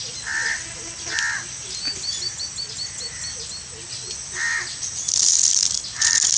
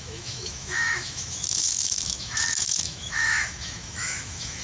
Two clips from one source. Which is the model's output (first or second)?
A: second